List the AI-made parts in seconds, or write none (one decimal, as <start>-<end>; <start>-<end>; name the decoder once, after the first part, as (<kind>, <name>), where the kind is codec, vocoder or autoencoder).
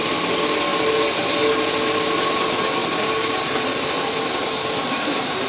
none